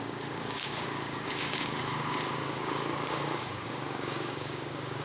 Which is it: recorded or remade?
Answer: remade